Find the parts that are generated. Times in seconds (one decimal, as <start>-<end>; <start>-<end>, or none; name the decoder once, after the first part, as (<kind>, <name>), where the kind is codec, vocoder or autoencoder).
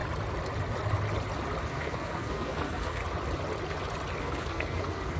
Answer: 1.6-3.0 (codec, SNAC); 4.2-5.2